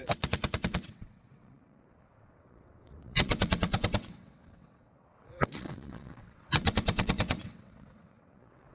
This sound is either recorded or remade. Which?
remade